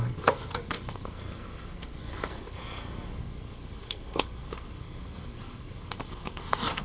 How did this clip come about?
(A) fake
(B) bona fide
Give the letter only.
A